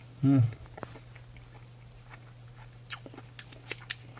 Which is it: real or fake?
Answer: real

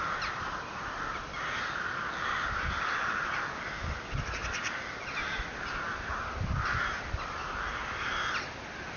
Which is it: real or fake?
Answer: real